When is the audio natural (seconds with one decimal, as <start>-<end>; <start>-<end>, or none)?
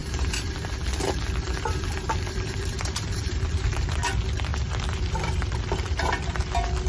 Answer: 4.0-4.5; 6.1-6.9